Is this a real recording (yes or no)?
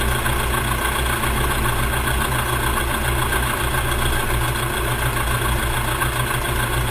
yes